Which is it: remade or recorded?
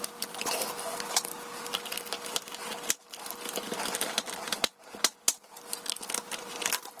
recorded